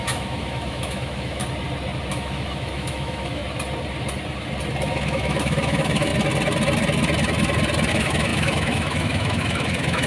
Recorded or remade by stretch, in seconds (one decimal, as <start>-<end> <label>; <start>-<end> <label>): 0.0-1.4 remade; 1.4-2.1 recorded; 2.1-3.4 remade; 3.4-4.9 recorded; 4.9-6.1 remade; 6.1-7.9 recorded; 7.9-10.1 remade

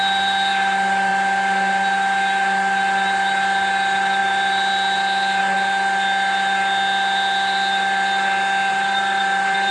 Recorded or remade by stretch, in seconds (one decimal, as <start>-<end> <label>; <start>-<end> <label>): 0.0-8.7 recorded; 8.7-9.7 remade

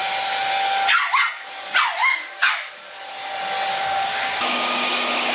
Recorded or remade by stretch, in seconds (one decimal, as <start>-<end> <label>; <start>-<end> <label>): 0.0-2.0 recorded; 2.0-2.7 remade; 2.7-3.7 recorded; 3.7-5.3 remade

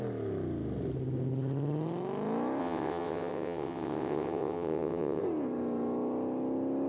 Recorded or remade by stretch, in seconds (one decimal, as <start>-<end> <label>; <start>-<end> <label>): 0.0-2.6 recorded; 2.6-5.2 remade; 5.2-6.9 recorded

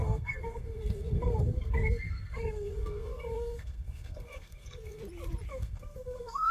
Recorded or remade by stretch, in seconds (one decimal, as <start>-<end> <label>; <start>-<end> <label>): 0.0-5.0 remade; 5.0-5.5 recorded; 5.5-6.5 remade

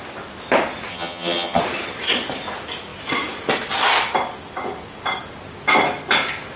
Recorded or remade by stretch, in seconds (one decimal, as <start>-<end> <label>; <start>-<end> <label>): 0.0-0.9 recorded; 0.9-1.6 remade; 1.6-6.6 recorded